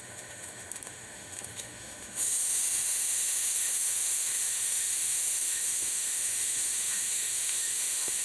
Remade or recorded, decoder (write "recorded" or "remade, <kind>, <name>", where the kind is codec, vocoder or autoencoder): remade, autoencoder, DAC-VAE